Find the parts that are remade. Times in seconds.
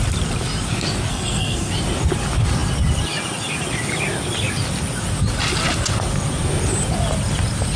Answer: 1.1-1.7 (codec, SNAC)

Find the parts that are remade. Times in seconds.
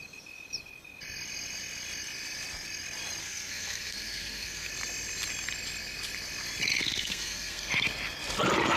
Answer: 3.2-4.7 (codec, SNAC); 6.8-7.7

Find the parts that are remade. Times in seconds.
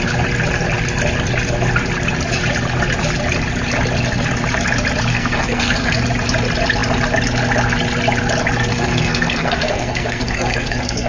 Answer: 5.1-6.0 (codec, SNAC); 8.7-11.1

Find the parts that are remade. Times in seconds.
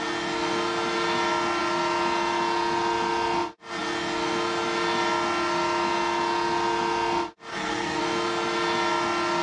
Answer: 7.5-8.0 (codec, SNAC)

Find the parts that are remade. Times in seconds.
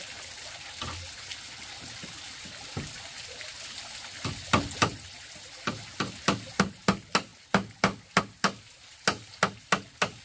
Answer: none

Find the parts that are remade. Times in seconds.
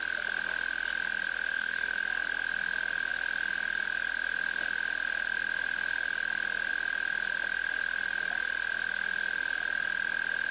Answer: 1.5-2.0 (codec, SNAC)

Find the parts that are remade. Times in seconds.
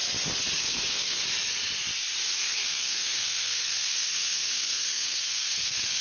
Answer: 0.6-1.2 (codec, SNAC); 2.4-6.0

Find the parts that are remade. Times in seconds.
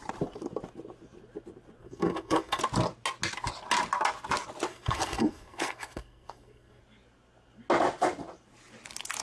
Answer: 1.8-2.6 (codec, SNAC); 4.7-6.8